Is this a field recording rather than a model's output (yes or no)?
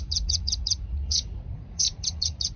no